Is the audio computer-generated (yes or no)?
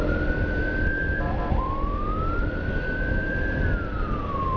no